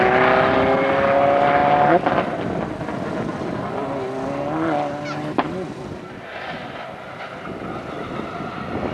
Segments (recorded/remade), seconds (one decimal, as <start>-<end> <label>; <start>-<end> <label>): 0.0-8.9 recorded